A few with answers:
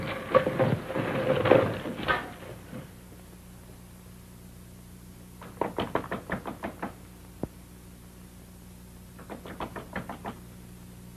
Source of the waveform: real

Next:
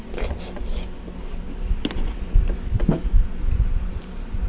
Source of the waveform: fake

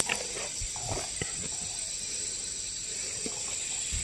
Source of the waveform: real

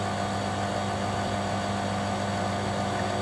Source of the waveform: real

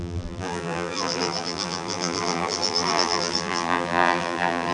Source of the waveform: fake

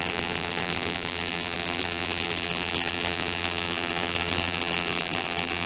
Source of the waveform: fake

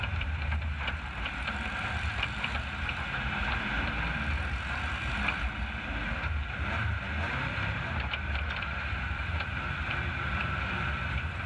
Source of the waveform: fake